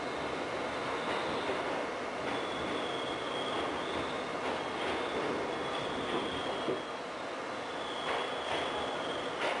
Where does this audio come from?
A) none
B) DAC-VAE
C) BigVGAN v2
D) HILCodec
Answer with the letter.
A